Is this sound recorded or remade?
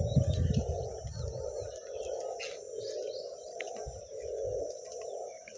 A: recorded